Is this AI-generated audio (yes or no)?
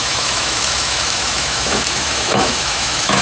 yes